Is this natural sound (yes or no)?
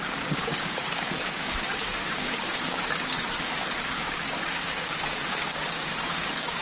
no